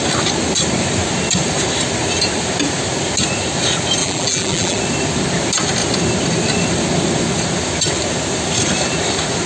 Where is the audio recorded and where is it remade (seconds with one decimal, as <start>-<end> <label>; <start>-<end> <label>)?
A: 0.0-4.0 recorded; 4.0-4.8 remade; 4.8-9.5 recorded